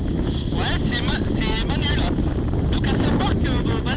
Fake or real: real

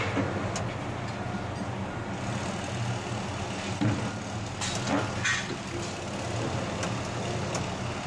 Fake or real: real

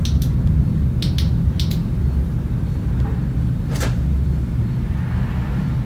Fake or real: real